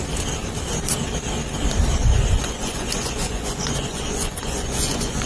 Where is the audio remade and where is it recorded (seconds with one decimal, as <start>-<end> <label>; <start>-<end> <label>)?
0.0-2.0 recorded; 2.0-5.3 remade